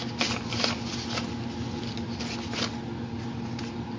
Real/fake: real